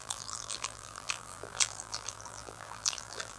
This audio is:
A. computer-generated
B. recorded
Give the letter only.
A